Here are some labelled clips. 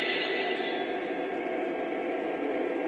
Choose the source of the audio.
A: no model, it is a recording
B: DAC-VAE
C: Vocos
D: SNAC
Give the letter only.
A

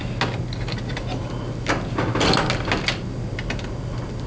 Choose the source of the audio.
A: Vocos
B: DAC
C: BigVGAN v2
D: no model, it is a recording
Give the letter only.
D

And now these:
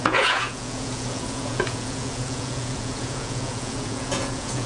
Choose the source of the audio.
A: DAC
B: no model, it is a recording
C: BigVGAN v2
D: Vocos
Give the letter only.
D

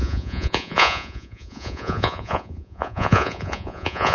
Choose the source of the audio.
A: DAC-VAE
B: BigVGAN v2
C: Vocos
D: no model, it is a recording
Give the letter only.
C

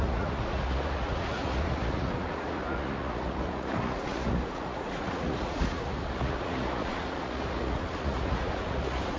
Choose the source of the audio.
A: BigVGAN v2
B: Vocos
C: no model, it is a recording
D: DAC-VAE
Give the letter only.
B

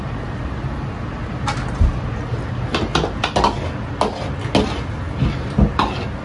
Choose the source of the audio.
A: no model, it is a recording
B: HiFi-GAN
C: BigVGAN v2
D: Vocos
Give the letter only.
A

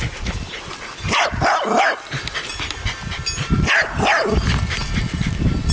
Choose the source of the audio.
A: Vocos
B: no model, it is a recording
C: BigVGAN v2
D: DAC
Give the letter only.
B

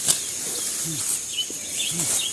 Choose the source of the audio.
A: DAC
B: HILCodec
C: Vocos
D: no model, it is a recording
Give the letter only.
D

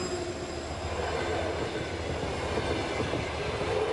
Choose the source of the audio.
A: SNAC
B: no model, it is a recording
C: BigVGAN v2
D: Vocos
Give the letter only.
B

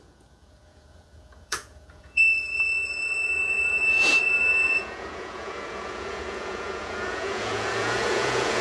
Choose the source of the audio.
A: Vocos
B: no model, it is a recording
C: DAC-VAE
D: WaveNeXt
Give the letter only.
A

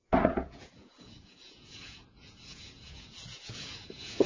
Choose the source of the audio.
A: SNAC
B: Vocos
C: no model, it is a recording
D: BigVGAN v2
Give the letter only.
B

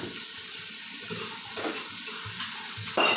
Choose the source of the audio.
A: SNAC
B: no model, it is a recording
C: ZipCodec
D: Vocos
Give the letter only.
B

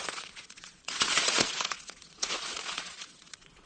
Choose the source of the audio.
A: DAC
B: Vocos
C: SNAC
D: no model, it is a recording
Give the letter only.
B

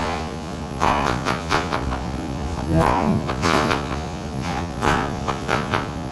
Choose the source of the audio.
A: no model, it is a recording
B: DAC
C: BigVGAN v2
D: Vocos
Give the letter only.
D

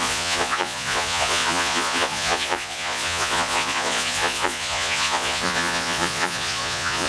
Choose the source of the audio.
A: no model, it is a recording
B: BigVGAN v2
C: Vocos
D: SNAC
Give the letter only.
C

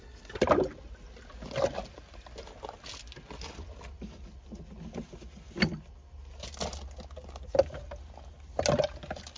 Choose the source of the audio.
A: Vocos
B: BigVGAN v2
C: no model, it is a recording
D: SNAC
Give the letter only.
C